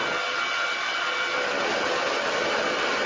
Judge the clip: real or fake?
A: real